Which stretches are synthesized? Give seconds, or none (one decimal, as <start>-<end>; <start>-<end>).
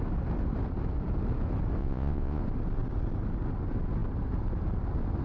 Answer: 1.8-2.4